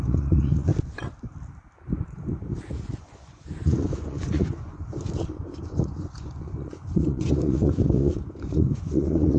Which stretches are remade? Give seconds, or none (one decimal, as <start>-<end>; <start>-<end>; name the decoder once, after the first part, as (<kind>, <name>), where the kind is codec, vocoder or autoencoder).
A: 0.0-0.7 (vocoder, Vocos); 2.0-2.5; 3.0-9.4